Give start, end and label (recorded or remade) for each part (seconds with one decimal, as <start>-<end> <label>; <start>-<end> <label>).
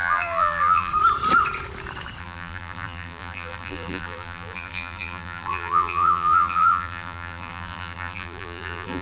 0.0-0.9 remade; 0.9-2.2 recorded; 2.2-9.0 remade